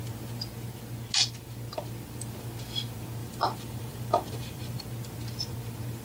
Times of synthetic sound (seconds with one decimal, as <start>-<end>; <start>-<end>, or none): 3.2-4.8